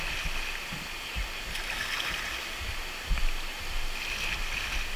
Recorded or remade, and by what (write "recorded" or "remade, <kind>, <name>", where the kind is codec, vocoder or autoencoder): recorded